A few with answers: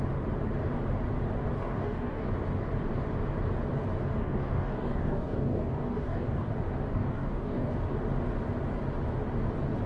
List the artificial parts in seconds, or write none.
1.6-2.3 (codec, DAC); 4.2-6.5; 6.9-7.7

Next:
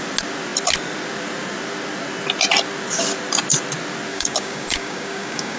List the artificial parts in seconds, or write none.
4.1-5.6 (codec, DAC)

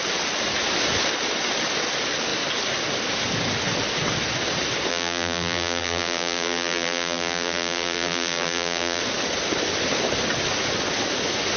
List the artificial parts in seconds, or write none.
4.9-9.0 (vocoder, BigVGAN v2)

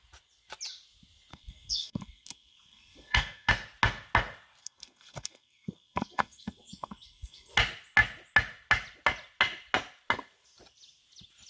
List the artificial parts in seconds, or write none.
1.3-3.5 (codec, SNAC); 4.6-7.5

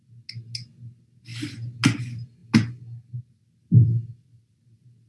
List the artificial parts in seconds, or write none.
none

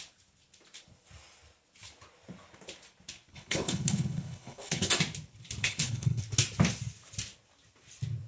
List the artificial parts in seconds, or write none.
3.3-4.9 (codec, HILCodec); 5.6-6.2